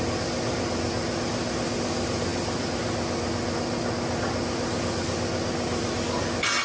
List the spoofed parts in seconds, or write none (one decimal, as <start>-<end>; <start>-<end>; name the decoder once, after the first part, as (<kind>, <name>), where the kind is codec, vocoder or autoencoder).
none